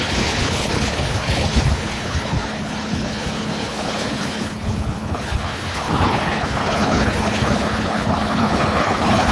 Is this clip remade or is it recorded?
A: remade